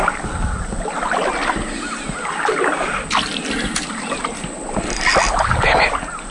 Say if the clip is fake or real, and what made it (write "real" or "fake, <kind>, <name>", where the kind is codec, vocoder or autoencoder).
real